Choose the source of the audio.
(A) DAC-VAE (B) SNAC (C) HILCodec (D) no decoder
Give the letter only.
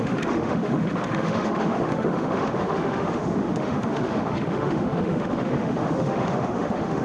A